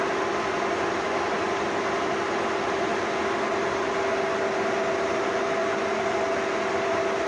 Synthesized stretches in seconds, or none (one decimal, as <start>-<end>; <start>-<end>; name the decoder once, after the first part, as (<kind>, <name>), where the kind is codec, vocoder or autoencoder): 0.0-2.9 (vocoder, BigVGAN v2); 4.2-7.3